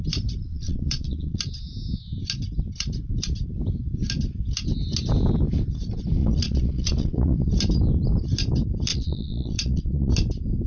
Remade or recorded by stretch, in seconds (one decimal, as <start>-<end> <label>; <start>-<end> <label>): 0.0-0.5 recorded; 0.5-1.4 remade; 1.4-6.2 recorded; 6.2-7.5 remade; 7.5-8.9 recorded; 8.9-10.1 remade; 10.1-10.7 recorded